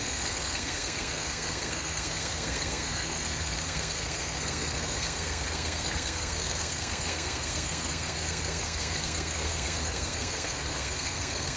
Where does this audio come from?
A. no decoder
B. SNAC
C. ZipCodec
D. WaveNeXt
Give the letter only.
B